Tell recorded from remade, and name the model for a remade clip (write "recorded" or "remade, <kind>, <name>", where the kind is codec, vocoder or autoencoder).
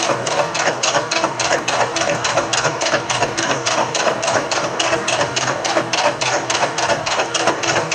remade, codec, DAC